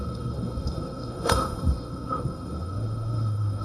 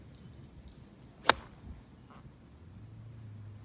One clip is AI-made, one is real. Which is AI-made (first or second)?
first